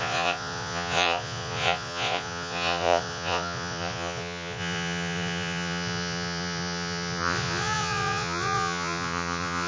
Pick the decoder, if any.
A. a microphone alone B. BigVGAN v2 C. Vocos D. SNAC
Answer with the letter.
C